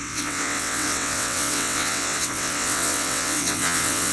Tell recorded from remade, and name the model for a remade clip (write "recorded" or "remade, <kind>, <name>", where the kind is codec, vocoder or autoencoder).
remade, vocoder, WaveNeXt